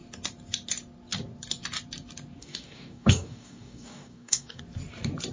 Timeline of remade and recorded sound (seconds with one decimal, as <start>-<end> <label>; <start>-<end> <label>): 0.0-2.4 recorded; 2.4-4.6 remade; 4.6-5.3 recorded